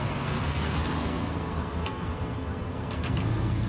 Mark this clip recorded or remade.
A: remade